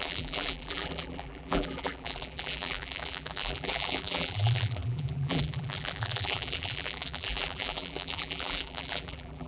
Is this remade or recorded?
remade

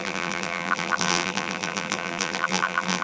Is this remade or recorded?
remade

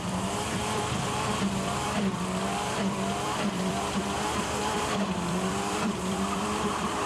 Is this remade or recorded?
remade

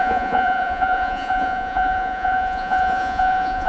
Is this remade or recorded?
remade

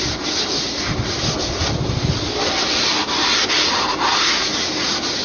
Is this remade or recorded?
recorded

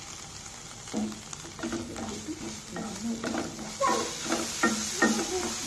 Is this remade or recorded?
recorded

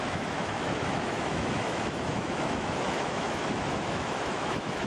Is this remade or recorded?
remade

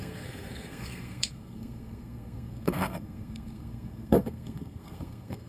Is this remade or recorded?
remade